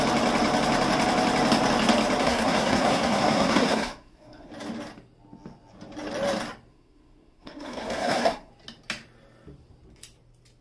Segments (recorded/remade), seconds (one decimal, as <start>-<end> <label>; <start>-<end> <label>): 0.0-2.2 recorded; 2.2-4.5 remade; 4.5-6.7 recorded; 6.7-8.5 remade; 8.5-10.6 recorded